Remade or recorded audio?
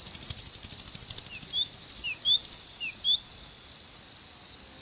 remade